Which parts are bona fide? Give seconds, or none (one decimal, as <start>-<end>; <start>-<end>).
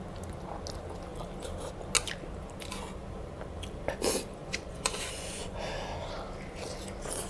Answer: 0.0-4.4; 5.6-7.3